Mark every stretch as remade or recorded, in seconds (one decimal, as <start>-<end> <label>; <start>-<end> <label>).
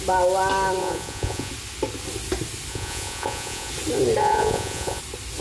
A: 0.0-0.8 recorded; 0.8-1.5 remade; 1.5-2.7 recorded; 2.7-3.7 remade; 3.7-4.2 recorded; 4.2-5.0 remade; 5.0-5.4 recorded